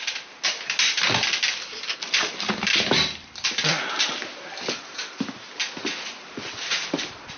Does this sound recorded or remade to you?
recorded